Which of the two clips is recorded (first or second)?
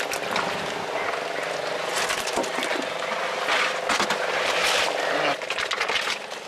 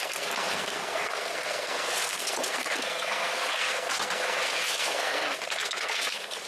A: first